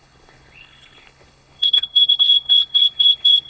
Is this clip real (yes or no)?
no